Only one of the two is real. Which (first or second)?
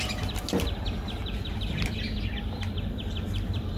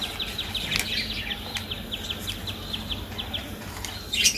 second